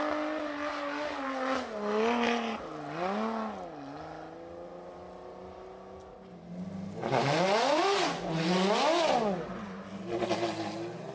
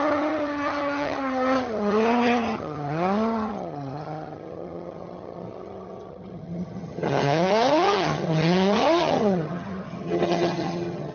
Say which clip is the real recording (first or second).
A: first